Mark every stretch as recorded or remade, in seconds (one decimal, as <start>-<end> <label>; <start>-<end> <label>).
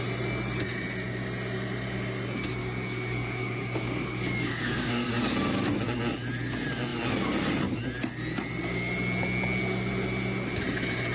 0.0-2.6 recorded; 2.6-5.1 remade; 5.1-11.1 recorded